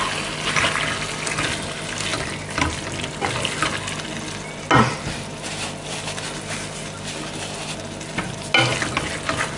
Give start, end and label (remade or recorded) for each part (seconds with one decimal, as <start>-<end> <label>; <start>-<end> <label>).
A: 0.0-9.6 recorded